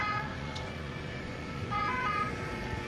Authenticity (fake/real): fake